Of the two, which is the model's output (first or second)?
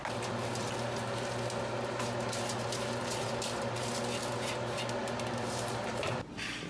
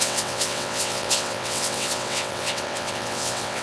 second